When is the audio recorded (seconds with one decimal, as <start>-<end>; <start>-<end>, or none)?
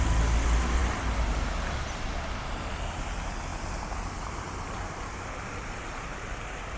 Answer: 0.0-6.8